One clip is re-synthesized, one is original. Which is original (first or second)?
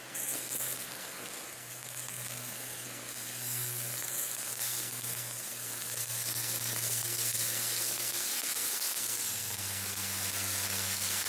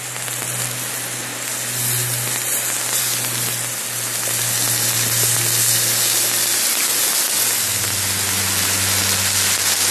second